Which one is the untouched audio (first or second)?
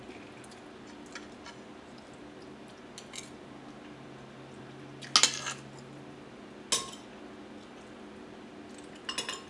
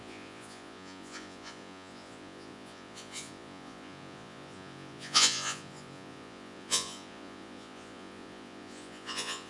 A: first